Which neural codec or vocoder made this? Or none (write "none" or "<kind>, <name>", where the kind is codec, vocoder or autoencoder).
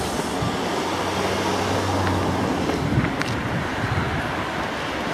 none